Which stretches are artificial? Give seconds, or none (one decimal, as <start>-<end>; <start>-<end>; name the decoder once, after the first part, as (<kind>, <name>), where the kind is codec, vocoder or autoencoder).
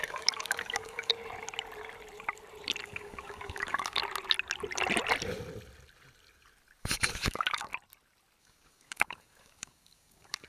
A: 0.0-1.1 (codec, DAC); 2.8-4.0; 6.8-7.7; 8.4-10.5